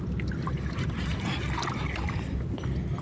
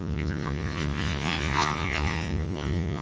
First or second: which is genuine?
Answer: first